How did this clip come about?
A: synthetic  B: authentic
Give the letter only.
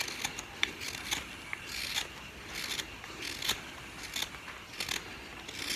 B